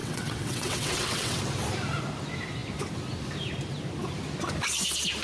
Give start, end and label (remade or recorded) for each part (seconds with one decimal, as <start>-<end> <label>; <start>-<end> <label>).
0.0-1.4 remade; 1.4-5.2 recorded